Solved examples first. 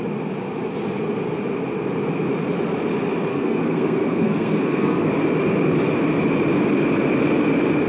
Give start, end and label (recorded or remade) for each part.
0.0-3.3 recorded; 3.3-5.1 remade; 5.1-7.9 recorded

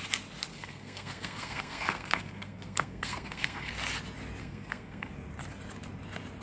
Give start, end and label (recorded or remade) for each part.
0.0-0.5 recorded; 0.5-3.7 remade; 3.7-4.4 recorded; 4.4-5.1 remade; 5.1-6.4 recorded

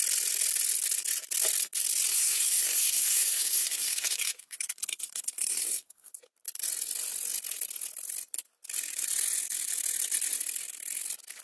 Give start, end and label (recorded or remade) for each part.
0.0-2.1 recorded; 2.1-6.2 remade; 6.2-11.4 recorded

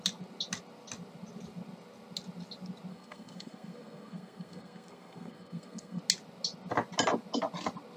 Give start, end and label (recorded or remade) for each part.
0.0-2.9 recorded; 2.9-6.0 remade; 6.0-8.0 recorded

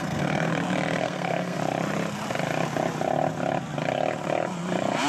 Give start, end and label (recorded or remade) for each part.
0.0-0.5 remade; 0.5-1.0 recorded; 1.0-1.6 remade; 1.6-5.1 recorded

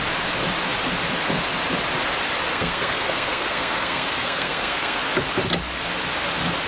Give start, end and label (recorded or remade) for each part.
0.0-2.5 recorded; 2.5-5.0 remade; 5.0-6.7 recorded

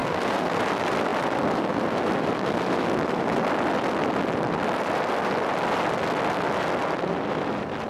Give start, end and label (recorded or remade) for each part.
0.0-0.6 remade; 0.6-7.9 recorded